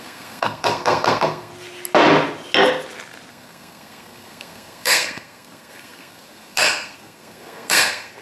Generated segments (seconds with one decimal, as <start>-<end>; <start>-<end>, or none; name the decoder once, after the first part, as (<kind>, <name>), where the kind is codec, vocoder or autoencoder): 0.0-1.5 (codec, SNAC); 3.3-8.2